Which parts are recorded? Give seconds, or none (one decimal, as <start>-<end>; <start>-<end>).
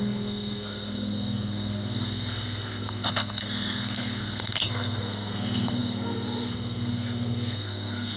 none